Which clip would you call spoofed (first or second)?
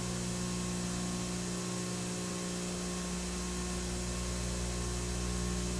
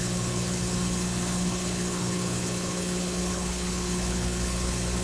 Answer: second